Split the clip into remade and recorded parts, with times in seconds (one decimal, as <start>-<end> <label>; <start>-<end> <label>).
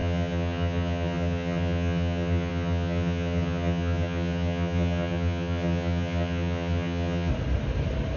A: 0.0-7.3 remade; 7.3-8.2 recorded